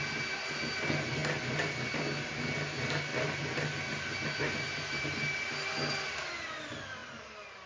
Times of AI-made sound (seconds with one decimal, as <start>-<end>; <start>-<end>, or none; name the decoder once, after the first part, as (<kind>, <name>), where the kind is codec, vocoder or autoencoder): none

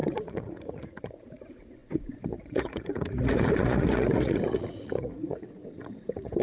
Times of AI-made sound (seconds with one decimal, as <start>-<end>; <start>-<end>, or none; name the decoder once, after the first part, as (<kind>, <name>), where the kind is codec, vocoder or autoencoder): 0.0-6.4 (vocoder, Vocos)

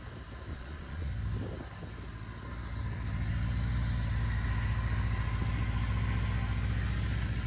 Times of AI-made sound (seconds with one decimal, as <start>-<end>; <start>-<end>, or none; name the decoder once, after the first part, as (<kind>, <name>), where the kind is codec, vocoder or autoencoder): 0.5-1.1 (vocoder, Vocos)

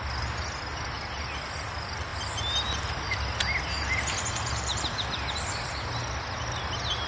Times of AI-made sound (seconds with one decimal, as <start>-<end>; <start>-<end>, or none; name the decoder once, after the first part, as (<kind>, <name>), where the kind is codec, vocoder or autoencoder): none

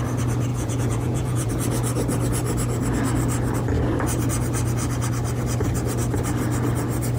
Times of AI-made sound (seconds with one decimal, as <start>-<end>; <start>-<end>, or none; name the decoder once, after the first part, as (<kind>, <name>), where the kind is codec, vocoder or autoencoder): 0.5-1.5 (vocoder, Vocos)